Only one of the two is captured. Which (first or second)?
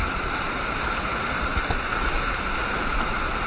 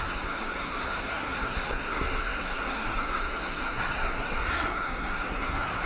first